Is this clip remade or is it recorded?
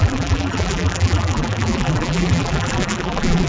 remade